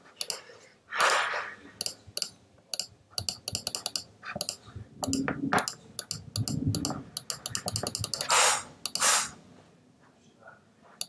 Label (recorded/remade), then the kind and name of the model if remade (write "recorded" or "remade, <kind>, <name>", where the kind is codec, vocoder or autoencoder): recorded